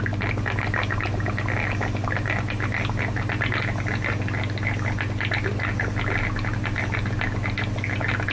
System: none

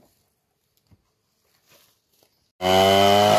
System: none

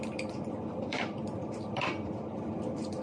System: vocoder, BigVGAN v2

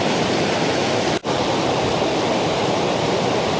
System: vocoder, BigVGAN v2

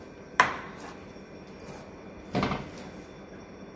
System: none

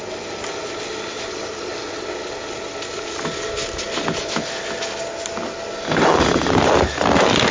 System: none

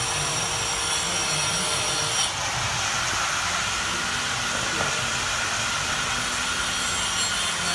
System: none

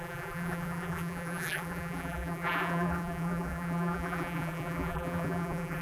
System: vocoder, BigVGAN v2